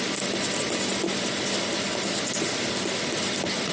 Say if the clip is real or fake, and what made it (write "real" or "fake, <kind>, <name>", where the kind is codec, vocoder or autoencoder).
real